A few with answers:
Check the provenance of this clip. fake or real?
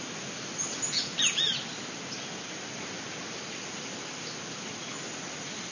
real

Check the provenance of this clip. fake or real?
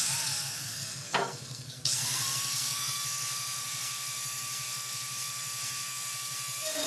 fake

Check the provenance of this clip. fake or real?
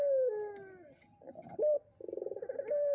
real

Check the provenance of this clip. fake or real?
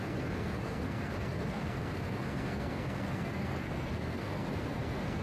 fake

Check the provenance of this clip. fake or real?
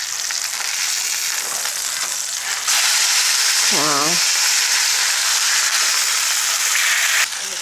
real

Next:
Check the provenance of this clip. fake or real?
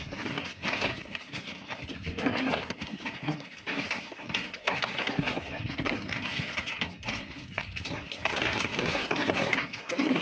fake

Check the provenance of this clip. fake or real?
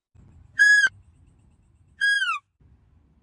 real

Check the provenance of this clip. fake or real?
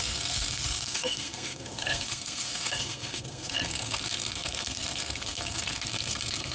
fake